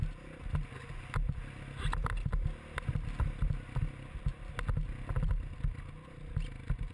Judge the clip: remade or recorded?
recorded